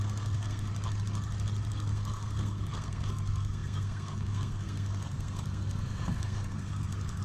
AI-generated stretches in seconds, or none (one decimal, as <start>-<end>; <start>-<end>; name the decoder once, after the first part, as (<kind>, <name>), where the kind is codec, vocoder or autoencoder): 0.0-0.7 (codec, SNAC); 1.7-7.2